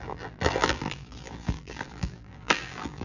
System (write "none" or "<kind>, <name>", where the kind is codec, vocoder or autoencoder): vocoder, BigVGAN v2